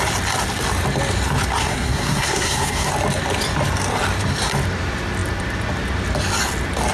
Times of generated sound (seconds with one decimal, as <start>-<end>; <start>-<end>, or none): 1.6-2.9